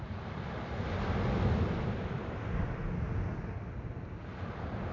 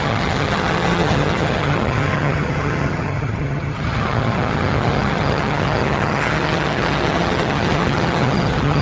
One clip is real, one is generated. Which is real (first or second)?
first